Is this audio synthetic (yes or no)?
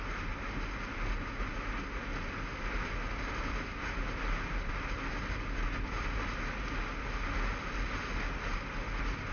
no